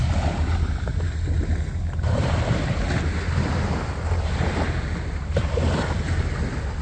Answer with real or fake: real